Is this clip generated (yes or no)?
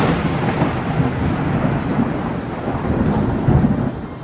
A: no